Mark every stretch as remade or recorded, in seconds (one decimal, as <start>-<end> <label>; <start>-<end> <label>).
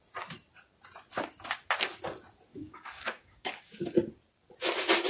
0.0-2.5 recorded; 2.5-3.9 remade; 3.9-5.1 recorded